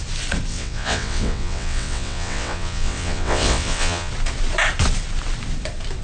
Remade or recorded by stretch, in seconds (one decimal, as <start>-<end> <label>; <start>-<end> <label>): 0.0-0.5 recorded; 0.5-4.1 remade; 4.1-6.0 recorded